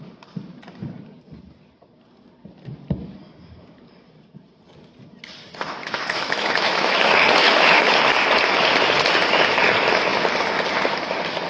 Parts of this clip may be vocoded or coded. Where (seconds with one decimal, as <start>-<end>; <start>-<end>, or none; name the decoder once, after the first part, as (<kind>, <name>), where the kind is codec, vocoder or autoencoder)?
5.8-8.0 (autoencoder, DAC-VAE)